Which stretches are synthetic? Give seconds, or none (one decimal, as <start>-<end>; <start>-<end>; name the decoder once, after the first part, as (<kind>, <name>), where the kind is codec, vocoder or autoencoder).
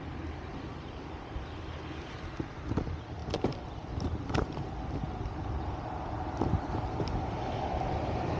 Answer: none